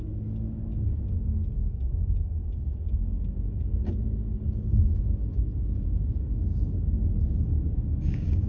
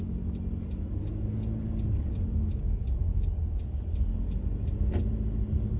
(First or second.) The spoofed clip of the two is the first